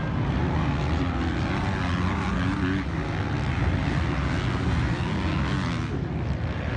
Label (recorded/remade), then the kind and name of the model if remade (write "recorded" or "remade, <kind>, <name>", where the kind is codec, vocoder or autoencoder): recorded